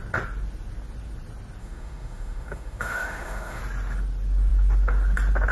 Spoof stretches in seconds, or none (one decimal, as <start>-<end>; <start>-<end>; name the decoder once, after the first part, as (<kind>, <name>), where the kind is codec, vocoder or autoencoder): 1.6-3.6 (autoencoder, DAC-VAE)

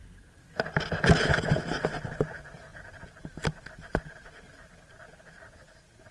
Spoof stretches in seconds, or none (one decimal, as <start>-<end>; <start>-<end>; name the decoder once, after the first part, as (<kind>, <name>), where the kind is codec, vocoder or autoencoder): none

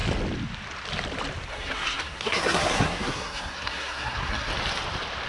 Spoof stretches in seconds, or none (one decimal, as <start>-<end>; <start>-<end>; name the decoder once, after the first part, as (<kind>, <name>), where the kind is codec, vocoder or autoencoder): 1.5-4.5 (codec, SNAC)

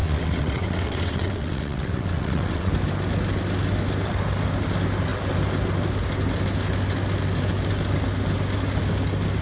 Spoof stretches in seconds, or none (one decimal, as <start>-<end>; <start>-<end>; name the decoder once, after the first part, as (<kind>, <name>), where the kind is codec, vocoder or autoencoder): 0.0-2.7 (vocoder, WaveNeXt)

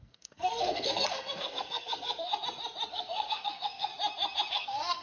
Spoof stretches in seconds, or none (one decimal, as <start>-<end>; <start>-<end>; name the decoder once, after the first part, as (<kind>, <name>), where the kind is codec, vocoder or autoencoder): 0.0-2.3 (codec, SNAC); 2.9-3.9; 4.5-5.0

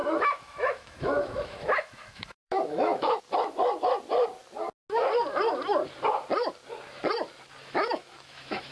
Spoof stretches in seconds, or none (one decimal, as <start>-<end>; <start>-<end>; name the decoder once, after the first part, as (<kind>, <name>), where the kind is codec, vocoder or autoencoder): 0.0-3.2 (autoencoder, DAC-VAE); 7.6-8.7

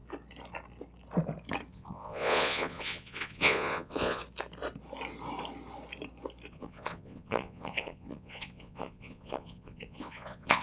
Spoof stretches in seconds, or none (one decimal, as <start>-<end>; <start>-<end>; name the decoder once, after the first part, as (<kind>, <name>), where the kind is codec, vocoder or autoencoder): 1.7-4.2 (vocoder, Vocos); 6.5-10.6

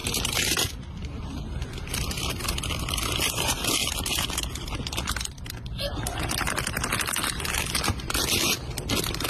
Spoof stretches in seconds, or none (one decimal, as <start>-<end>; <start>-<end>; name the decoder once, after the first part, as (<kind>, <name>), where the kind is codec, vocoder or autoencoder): 0.0-3.8 (vocoder, BigVGAN v2); 6.2-9.3